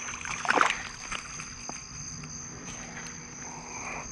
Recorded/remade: recorded